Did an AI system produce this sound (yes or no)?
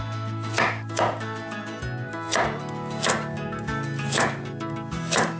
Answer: no